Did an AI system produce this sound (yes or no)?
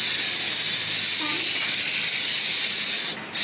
no